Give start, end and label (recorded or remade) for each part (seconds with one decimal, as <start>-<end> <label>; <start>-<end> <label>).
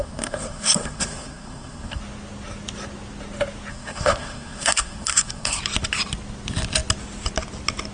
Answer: 0.0-2.0 remade; 2.0-3.7 recorded; 3.7-5.6 remade; 5.6-7.9 recorded